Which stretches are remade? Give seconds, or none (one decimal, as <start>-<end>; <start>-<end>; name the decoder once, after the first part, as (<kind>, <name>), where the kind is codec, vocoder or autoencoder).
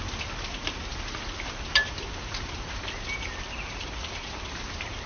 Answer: none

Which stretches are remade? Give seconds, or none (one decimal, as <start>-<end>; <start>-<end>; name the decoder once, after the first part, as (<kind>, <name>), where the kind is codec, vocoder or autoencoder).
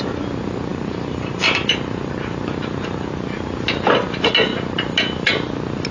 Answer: 0.7-3.1 (vocoder, BigVGAN v2); 4.5-5.3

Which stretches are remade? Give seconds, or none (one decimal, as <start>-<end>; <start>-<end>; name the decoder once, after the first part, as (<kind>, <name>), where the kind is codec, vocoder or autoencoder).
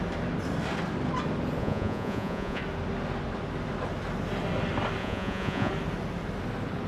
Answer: 1.6-2.6 (vocoder, Vocos); 5.0-5.7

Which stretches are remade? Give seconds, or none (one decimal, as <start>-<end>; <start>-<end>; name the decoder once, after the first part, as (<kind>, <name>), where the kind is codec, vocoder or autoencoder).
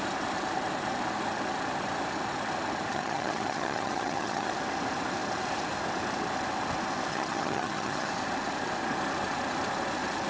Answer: 2.9-4.5 (vocoder, HiFi-GAN); 7.1-8.1